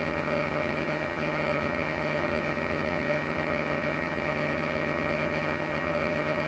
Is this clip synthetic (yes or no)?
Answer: yes